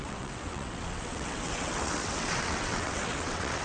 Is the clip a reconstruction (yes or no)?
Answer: yes